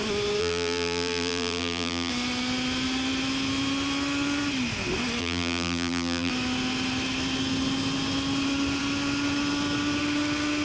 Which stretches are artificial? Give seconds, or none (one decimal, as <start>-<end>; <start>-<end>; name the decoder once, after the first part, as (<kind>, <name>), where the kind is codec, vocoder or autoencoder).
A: 0.4-2.1 (vocoder, BigVGAN v2); 5.2-6.3